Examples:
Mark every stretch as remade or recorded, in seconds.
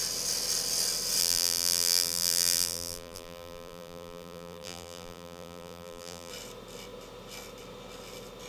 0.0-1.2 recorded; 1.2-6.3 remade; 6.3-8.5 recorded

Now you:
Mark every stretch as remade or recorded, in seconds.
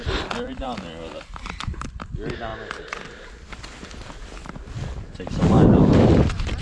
0.0-2.5 remade; 2.5-3.5 recorded; 3.5-6.6 remade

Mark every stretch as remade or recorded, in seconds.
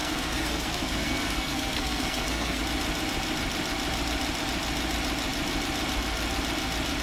0.0-2.6 remade; 2.6-7.0 recorded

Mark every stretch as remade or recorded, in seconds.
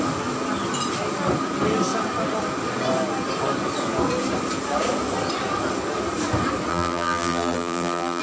0.0-6.7 recorded; 6.7-8.2 remade